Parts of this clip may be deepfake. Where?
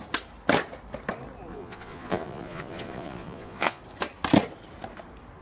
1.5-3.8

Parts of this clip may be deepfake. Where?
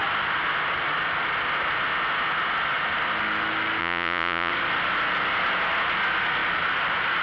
3.8-4.5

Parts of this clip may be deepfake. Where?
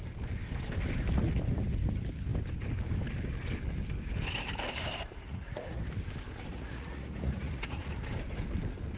5.2-5.8; 6.5-7.9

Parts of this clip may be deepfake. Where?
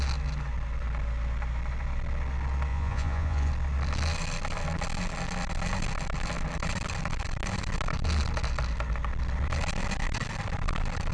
2.7-3.5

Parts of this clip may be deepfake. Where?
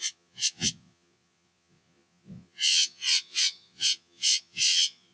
0.0-5.1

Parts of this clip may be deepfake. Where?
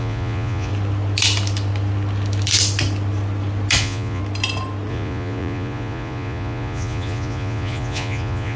0.0-0.7; 3.8-4.2; 4.9-8.6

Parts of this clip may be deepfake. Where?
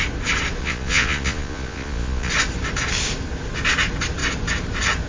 0.6-2.3